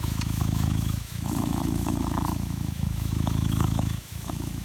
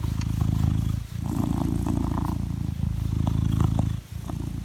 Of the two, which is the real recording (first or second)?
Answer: second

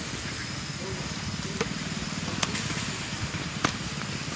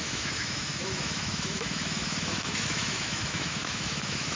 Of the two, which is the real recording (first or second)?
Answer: first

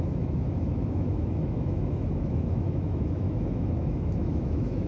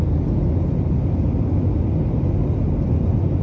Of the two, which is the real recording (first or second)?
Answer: second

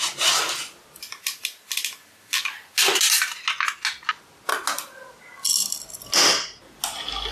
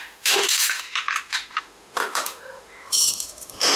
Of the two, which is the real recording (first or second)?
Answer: first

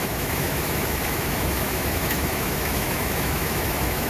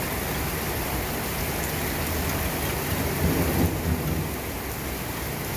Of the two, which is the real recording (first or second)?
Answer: second